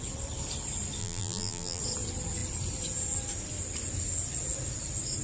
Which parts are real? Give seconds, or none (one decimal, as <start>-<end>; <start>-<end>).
0.0-1.0; 1.8-5.2